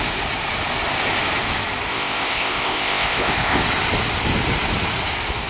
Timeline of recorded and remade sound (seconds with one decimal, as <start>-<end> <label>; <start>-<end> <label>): 0.0-1.9 recorded; 1.9-3.6 remade; 3.6-5.5 recorded